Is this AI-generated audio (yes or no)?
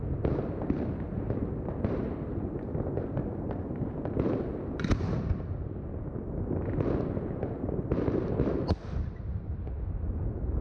no